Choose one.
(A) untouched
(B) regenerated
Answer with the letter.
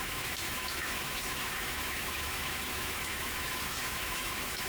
B